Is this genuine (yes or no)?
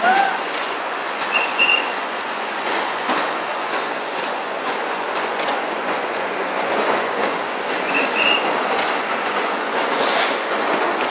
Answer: no